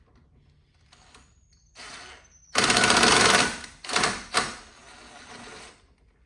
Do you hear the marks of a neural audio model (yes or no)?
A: no